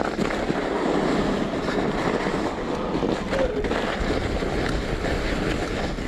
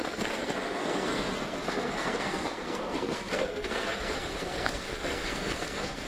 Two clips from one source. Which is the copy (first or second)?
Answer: second